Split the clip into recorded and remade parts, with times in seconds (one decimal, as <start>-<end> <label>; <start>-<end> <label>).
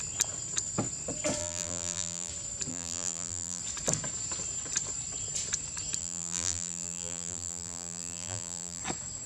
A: 0.0-1.4 recorded; 1.4-2.3 remade; 2.3-2.7 recorded; 2.7-3.6 remade; 3.6-6.0 recorded; 6.0-8.8 remade; 8.8-9.3 recorded